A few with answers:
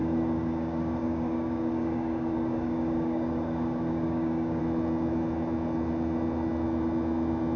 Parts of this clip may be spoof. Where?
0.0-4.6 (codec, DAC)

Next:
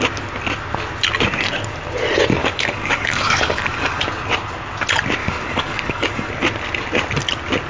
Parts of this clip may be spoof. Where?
2.4-4.0 (codec, DAC); 5.2-6.3